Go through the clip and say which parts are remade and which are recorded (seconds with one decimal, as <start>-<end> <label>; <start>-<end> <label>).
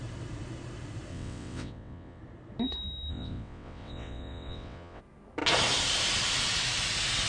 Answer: 0.0-1.1 recorded; 1.1-2.2 remade; 2.2-3.1 recorded; 3.1-5.0 remade; 5.0-7.3 recorded